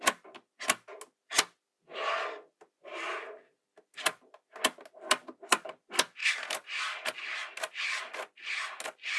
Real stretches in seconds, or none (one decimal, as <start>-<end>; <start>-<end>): 0.0-9.2